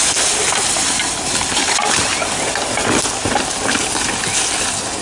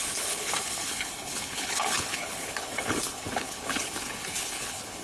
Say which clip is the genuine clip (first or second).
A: first